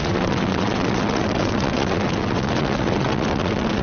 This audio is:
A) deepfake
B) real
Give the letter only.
A